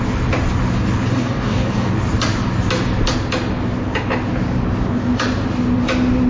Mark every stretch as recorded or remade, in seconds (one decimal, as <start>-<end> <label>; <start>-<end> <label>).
0.0-1.1 recorded; 1.1-1.9 remade; 1.9-6.3 recorded